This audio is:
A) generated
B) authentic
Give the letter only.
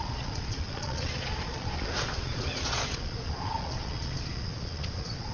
A